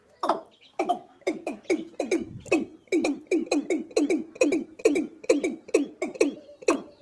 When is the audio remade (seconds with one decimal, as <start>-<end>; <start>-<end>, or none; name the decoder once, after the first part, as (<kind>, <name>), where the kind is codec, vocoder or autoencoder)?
none